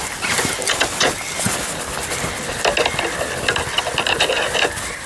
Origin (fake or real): real